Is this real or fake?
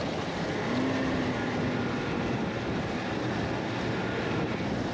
real